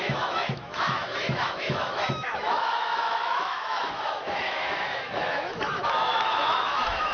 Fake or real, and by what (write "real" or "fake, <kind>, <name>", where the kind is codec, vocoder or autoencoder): fake, autoencoder, DAC-VAE